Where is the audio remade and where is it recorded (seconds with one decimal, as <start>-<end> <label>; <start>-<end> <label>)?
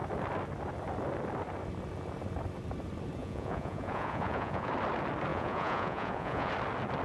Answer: 0.0-3.2 recorded; 3.2-4.7 remade; 4.7-5.3 recorded; 5.3-6.5 remade; 6.5-7.0 recorded